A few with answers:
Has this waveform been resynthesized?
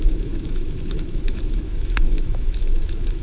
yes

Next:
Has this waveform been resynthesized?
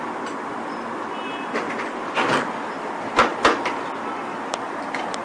no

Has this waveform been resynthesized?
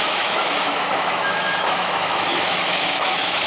yes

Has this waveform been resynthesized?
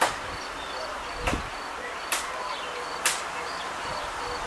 no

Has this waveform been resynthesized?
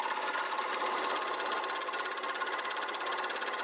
no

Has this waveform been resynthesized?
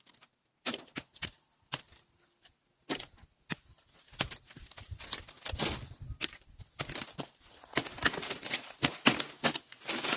no